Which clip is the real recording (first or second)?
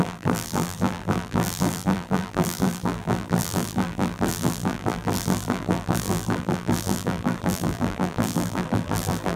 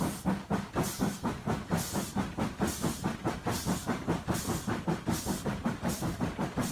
second